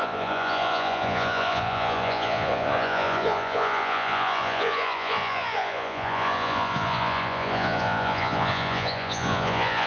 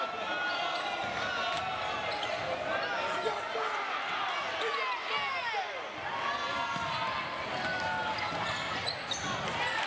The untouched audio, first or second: second